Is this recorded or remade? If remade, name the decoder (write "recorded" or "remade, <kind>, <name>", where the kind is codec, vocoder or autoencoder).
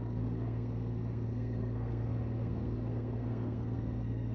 remade, codec, SNAC